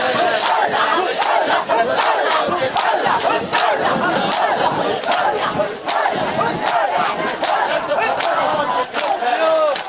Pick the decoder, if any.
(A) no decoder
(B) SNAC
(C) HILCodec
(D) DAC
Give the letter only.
A